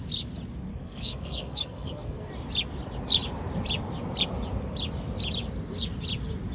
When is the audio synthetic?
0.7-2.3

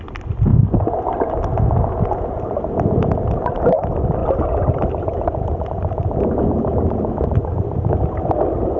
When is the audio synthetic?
none

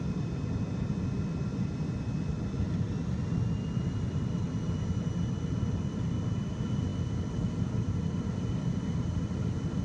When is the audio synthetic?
none

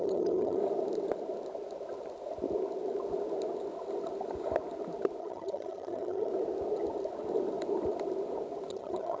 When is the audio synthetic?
0.0-0.6; 5.2-6.3; 8.7-9.2

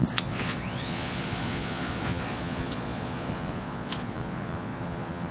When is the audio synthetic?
0.0-5.3